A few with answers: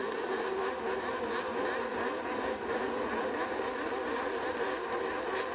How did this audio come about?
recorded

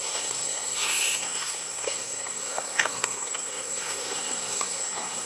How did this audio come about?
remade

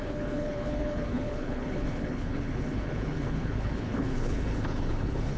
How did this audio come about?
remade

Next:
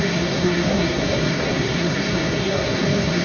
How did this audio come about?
remade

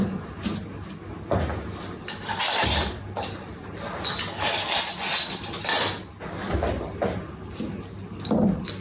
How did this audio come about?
recorded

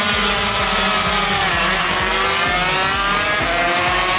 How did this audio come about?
recorded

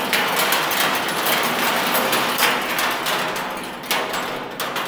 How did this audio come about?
recorded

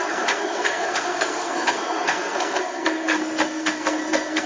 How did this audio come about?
remade